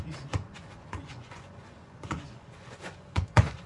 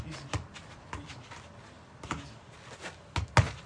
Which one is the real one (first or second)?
second